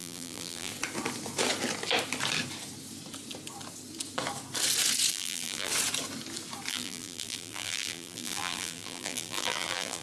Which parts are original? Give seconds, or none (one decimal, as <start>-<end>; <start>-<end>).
0.7-5.1; 5.7-6.7